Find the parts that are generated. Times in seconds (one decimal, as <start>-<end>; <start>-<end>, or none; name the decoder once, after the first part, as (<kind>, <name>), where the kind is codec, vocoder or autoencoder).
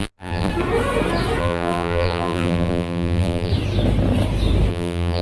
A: 0.0-0.5 (vocoder, BigVGAN v2); 1.4-3.5; 4.7-5.2